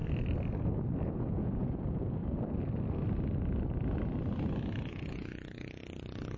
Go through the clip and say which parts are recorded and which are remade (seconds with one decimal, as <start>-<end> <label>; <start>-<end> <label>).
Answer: 0.0-1.0 recorded; 1.0-2.2 remade; 2.2-4.9 recorded; 4.9-5.8 remade; 5.8-6.4 recorded